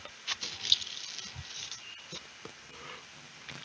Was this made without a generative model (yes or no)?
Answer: yes